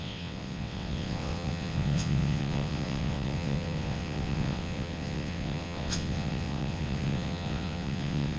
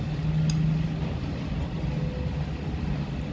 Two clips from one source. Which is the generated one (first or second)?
first